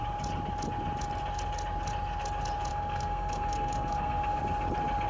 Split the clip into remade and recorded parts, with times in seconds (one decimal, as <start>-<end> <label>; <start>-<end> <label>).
0.0-2.7 recorded; 2.7-4.4 remade; 4.4-5.1 recorded